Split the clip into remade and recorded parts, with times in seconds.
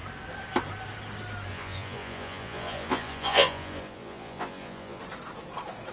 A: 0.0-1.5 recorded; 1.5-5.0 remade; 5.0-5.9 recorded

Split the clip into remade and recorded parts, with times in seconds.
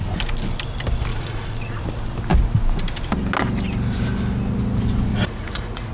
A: 0.0-1.1 recorded; 1.1-1.8 remade; 1.8-5.1 recorded; 5.1-5.9 remade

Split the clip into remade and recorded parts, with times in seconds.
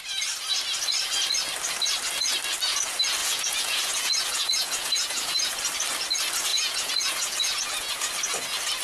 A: 0.0-3.2 recorded; 3.2-5.6 remade; 5.6-6.5 recorded; 6.5-8.1 remade; 8.1-8.8 recorded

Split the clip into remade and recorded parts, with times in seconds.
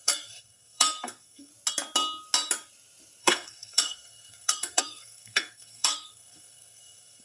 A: 0.0-1.5 remade; 1.5-3.2 recorded; 3.2-7.2 remade